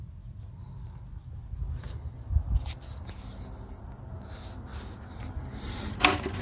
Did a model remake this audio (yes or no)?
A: no